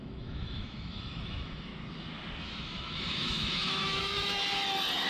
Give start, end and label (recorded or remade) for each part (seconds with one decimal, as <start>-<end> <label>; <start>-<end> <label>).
0.0-1.7 remade; 1.7-2.4 recorded; 2.4-4.4 remade; 4.4-5.1 recorded